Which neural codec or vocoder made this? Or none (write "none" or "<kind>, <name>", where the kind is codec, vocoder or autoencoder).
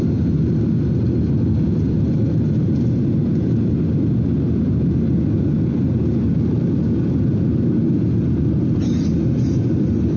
none